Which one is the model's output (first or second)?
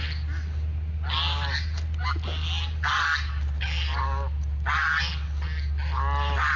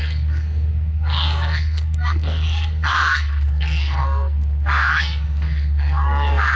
second